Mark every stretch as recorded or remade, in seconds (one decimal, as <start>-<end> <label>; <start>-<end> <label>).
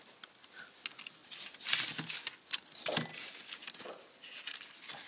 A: 0.0-5.1 recorded